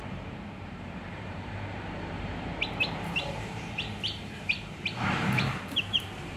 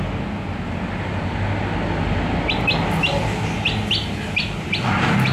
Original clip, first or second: second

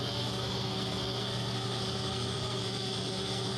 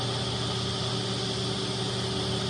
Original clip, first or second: second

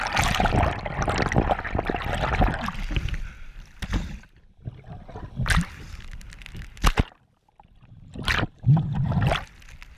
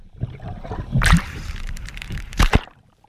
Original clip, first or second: first